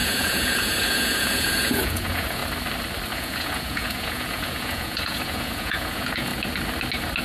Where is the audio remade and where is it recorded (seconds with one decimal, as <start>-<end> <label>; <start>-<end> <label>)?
0.0-2.4 remade; 2.4-3.1 recorded; 3.1-6.3 remade; 6.3-7.2 recorded